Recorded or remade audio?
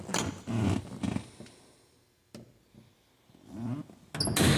recorded